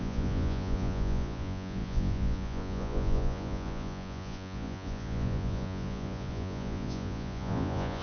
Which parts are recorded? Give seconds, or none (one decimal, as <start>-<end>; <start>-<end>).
none